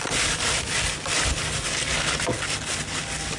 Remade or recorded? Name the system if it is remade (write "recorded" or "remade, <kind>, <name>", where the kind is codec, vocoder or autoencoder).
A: recorded